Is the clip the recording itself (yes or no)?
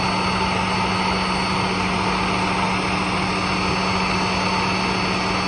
yes